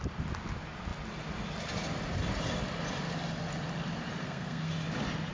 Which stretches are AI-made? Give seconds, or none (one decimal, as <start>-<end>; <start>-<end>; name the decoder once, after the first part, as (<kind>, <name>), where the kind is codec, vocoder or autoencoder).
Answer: 4.2-4.7 (codec, SNAC)